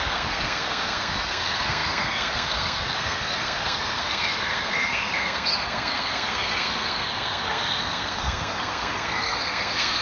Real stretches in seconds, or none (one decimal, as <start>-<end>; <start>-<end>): none